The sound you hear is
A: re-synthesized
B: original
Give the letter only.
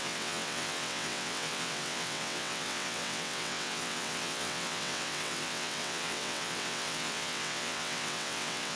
A